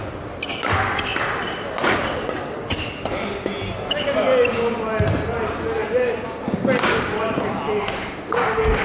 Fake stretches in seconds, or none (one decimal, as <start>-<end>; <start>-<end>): 7.8-8.8

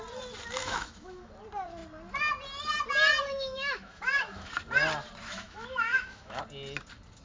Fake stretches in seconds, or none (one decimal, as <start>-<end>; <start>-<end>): 0.6-1.3; 3.3-4.5; 5.2-6.4

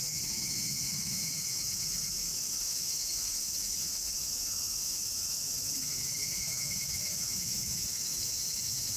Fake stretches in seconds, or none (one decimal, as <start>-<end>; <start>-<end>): 0.0-9.0

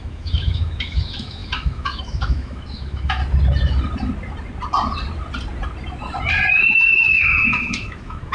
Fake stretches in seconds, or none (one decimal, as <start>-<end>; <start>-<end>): 0.0-3.2; 6.5-8.3